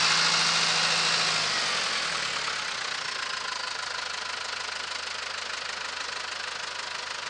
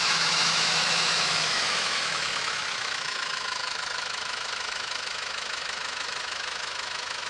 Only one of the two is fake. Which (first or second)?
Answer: second